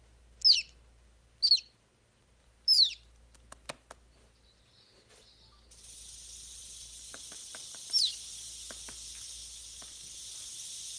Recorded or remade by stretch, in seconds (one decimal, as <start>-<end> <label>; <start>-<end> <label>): 0.0-7.4 recorded; 7.4-7.9 remade; 7.9-11.0 recorded